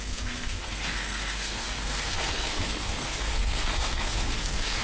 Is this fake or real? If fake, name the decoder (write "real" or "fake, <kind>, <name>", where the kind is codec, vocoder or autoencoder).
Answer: fake, codec, SNAC